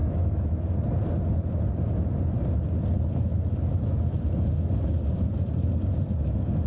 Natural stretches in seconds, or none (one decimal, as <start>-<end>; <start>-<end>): 0.6-3.7; 4.2-6.7